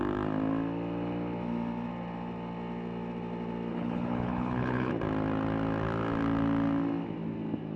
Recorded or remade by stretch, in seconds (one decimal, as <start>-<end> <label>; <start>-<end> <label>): 0.0-3.7 recorded; 3.7-4.9 remade; 4.9-7.8 recorded